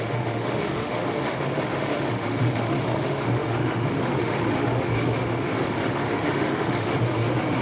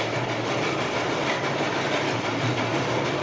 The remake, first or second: first